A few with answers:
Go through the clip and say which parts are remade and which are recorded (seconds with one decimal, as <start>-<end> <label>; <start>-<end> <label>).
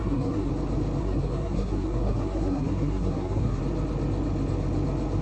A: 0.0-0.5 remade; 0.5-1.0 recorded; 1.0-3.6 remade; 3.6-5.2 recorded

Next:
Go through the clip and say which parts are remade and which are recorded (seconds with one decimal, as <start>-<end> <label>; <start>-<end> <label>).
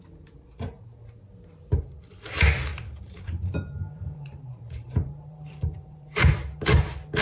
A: 0.0-2.7 recorded; 2.7-6.3 remade; 6.3-7.2 recorded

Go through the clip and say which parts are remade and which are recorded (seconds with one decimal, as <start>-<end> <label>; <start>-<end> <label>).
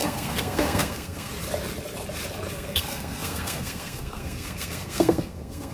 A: 0.0-1.3 remade; 1.3-2.5 recorded; 2.5-5.7 remade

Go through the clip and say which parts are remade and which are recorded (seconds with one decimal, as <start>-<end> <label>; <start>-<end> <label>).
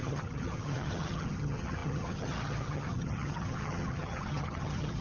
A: 0.0-5.0 remade